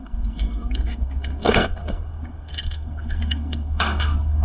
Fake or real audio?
fake